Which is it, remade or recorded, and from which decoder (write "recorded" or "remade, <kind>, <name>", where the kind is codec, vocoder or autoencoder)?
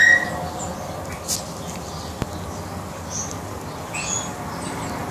recorded